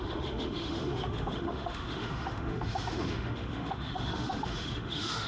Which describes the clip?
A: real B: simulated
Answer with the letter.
B